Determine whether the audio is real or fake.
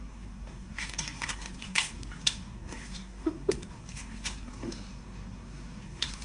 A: fake